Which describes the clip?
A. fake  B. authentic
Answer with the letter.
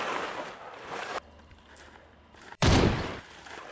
A